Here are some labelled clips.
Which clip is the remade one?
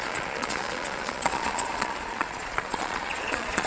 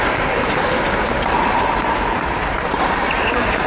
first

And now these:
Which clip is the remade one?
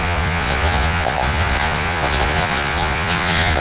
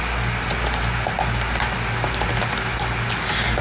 first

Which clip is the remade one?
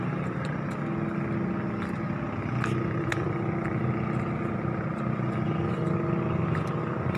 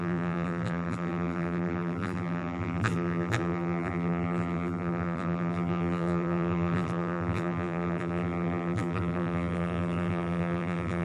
second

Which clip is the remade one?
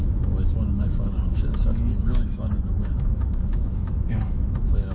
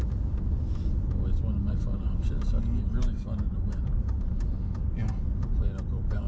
first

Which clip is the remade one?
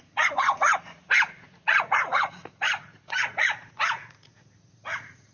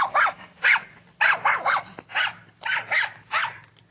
first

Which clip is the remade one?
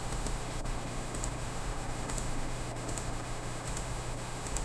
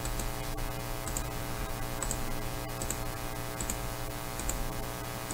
first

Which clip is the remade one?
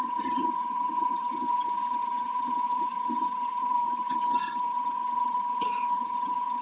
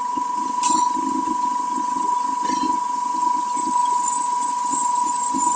first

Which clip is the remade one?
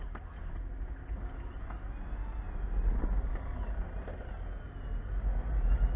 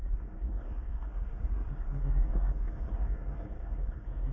second